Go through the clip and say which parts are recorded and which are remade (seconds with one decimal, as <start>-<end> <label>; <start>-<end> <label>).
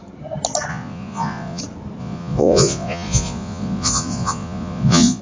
0.0-0.7 recorded; 0.7-1.6 remade; 1.6-2.0 recorded; 2.0-5.2 remade